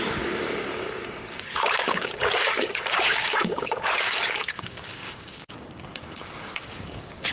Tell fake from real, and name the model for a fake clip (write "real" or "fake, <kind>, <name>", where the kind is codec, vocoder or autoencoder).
fake, codec, DAC